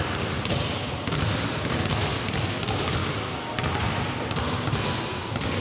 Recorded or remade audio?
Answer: recorded